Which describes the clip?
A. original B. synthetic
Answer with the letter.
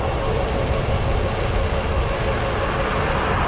A